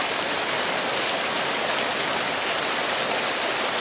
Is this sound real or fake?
real